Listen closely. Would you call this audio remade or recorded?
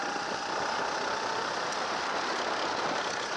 recorded